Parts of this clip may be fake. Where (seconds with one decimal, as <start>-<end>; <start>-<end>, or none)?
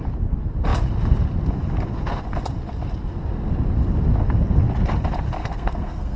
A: 5.4-6.2